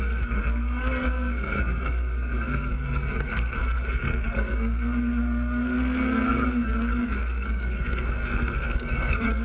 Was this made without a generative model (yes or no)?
no